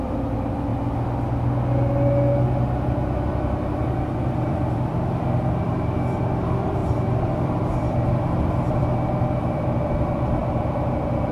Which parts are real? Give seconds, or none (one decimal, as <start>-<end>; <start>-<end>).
0.7-4.2